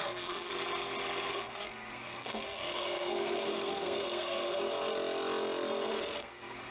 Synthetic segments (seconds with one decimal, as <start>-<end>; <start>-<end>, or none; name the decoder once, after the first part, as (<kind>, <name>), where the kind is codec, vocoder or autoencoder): 0.0-0.5 (codec, SNAC); 1.3-4.6; 5.9-6.7